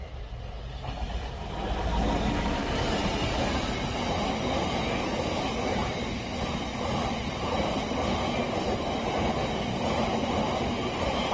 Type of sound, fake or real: real